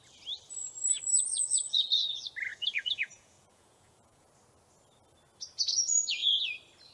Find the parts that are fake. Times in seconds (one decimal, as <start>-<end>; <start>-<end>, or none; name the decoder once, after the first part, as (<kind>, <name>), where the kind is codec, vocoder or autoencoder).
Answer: 2.5-4.3 (vocoder, Vocos)